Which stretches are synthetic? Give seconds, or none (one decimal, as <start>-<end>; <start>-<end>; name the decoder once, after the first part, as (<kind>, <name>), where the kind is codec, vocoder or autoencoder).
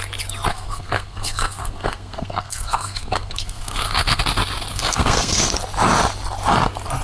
0.5-4.2 (codec, SNAC); 4.7-5.4